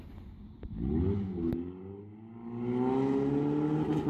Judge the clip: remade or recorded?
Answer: recorded